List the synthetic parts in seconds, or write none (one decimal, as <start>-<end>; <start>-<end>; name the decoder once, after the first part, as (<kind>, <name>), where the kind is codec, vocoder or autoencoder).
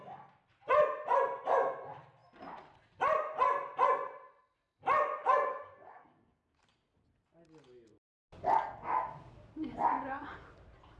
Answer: 5.2-6.6 (codec, DAC)